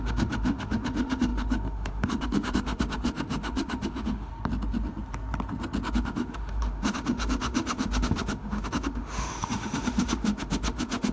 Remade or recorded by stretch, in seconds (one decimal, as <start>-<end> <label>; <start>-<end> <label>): 0.0-4.3 remade; 4.3-5.9 recorded; 5.9-11.1 remade